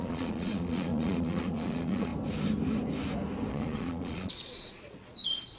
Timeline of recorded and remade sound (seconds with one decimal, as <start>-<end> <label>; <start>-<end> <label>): 0.0-2.1 remade; 2.1-3.5 recorded; 3.5-5.6 remade